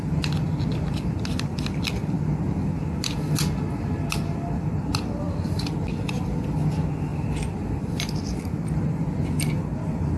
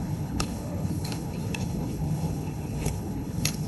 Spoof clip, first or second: second